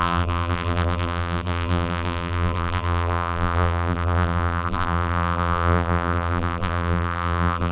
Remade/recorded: remade